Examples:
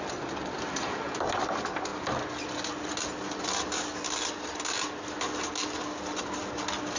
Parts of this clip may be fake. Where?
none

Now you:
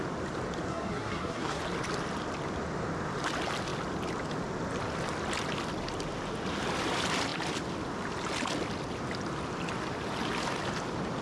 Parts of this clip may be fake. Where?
0.7-1.6

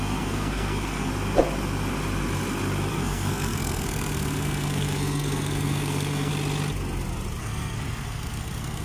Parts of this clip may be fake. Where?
0.0-1.1; 2.9-6.3; 7.4-8.8

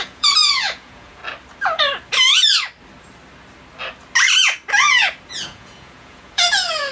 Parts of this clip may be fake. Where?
0.0-1.2; 5.3-6.9

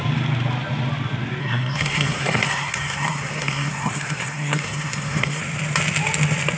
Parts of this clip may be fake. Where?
1.4-5.4

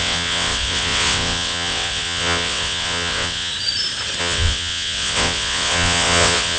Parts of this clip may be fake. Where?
0.0-3.5; 4.2-6.6

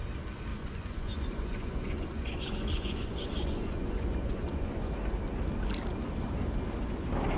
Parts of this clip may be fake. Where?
0.5-4.9

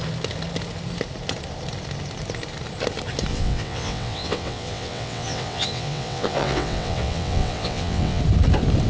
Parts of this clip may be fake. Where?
3.3-8.2